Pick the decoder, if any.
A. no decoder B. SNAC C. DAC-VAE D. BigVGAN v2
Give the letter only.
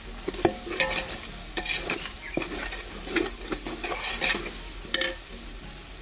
A